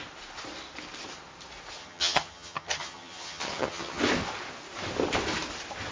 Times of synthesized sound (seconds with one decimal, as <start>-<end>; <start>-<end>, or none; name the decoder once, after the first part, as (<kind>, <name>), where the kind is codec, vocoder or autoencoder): 1.8-4.0 (vocoder, HiFi-GAN)